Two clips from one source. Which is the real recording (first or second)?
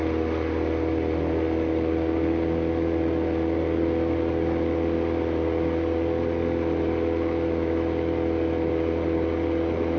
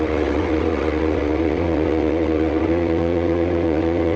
first